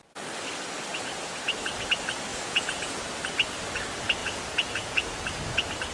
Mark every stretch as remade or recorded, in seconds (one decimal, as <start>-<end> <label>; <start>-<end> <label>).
0.0-0.9 recorded; 0.9-1.4 remade; 1.4-2.3 recorded; 2.3-3.0 remade; 3.0-4.2 recorded; 4.2-5.1 remade; 5.1-5.9 recorded